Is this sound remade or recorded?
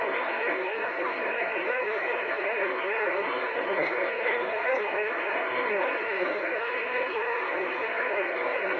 remade